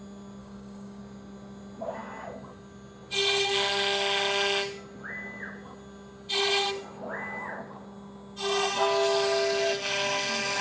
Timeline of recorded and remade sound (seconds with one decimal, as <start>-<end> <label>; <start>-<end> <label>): 0.0-0.4 recorded; 0.4-1.0 remade; 1.0-10.6 recorded